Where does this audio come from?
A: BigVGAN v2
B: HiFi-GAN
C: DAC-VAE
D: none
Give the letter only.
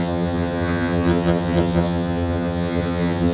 B